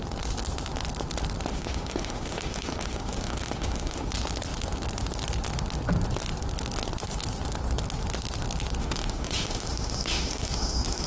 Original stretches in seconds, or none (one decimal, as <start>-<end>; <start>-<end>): 0.0-1.5; 4.1-8.8